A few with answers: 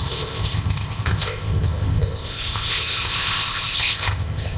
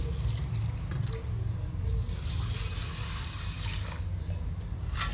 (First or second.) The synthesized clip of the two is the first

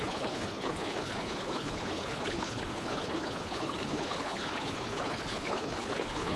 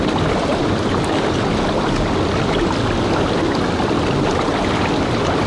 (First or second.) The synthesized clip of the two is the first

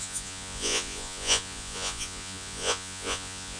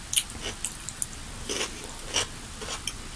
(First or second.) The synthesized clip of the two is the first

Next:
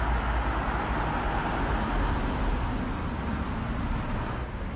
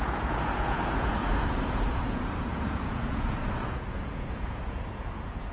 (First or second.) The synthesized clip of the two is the second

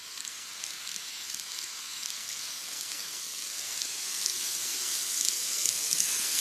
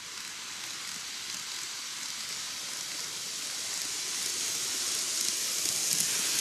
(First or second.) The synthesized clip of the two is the first